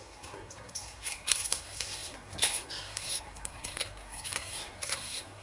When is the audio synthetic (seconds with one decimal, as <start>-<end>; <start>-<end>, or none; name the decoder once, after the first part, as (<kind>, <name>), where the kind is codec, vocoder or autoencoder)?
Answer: 0.0-5.4 (codec, SNAC)